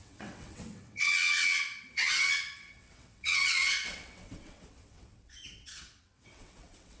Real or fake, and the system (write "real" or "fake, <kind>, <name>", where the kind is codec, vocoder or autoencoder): fake, vocoder, WaveNeXt